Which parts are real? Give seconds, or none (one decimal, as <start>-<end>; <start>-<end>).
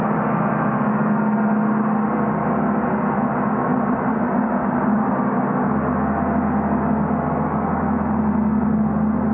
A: 0.0-3.7; 5.1-9.3